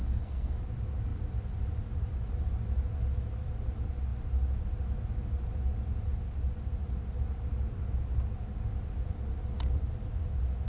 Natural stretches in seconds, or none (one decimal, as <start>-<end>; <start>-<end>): 0.6-10.7

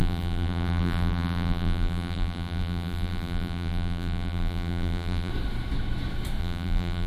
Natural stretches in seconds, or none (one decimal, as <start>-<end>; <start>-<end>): 5.3-6.4

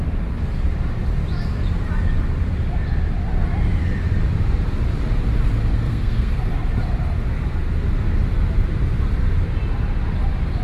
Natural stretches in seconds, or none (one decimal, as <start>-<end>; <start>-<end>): 0.0-5.7; 6.5-10.6

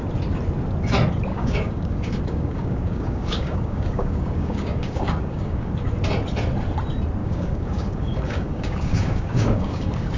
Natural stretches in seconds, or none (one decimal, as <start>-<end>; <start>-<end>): 0.0-1.3; 5.7-7.2

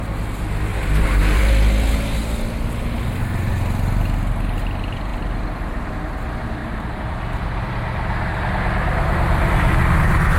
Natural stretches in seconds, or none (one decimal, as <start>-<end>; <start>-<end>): 0.0-0.7; 1.5-6.6; 7.7-10.4

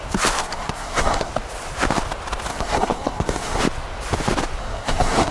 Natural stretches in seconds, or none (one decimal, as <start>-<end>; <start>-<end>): 0.0-0.4; 1.3-2.5; 3.6-4.6